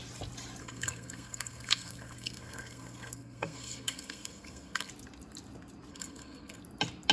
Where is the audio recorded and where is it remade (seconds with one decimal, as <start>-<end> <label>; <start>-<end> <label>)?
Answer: 0.0-0.6 recorded; 0.6-4.9 remade; 4.9-5.9 recorded; 5.9-6.6 remade; 6.6-7.1 recorded